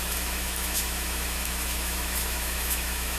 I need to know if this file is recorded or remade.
remade